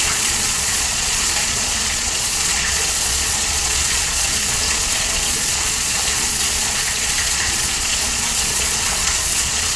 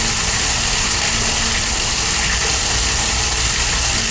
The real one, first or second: second